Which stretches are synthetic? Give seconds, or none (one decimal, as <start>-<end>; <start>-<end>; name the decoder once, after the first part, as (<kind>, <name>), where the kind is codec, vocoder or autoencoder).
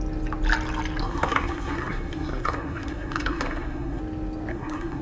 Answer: 1.0-4.0 (codec, SNAC); 4.5-5.0